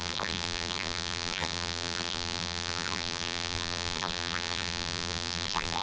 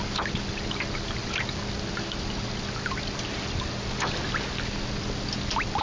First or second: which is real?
second